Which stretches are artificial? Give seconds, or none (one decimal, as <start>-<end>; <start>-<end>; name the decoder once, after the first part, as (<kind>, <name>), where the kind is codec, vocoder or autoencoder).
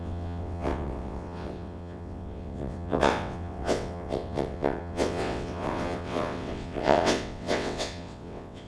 0.0-8.7 (vocoder, WaveNeXt)